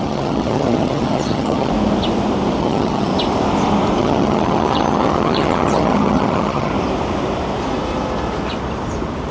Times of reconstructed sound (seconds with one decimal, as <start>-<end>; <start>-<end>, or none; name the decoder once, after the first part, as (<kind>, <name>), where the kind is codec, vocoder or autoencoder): 0.0-1.7 (vocoder, HiFi-GAN); 2.6-3.1; 4.0-6.7